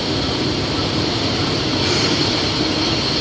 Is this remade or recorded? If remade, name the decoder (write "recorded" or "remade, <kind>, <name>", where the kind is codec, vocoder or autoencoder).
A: recorded